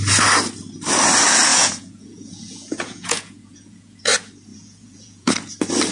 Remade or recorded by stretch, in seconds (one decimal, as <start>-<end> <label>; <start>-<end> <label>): 0.0-1.5 recorded; 1.5-4.0 remade; 4.0-4.5 recorded; 4.5-5.3 remade; 5.3-5.9 recorded